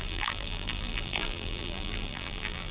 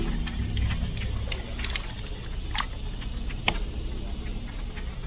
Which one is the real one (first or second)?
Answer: second